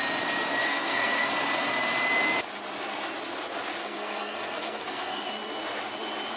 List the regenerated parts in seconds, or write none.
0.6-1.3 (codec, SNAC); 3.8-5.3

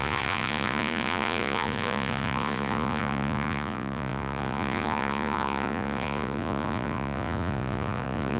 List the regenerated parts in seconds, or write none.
0.0-8.4 (vocoder, Vocos)

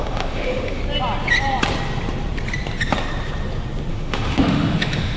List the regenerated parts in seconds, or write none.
0.0-0.8 (autoencoder, DAC-VAE); 3.9-5.2

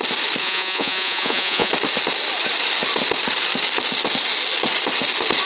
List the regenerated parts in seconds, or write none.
0.4-1.7 (vocoder, Vocos)

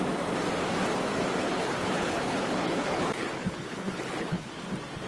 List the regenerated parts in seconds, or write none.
1.4-4.5 (codec, HILCodec)